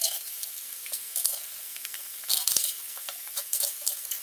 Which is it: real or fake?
fake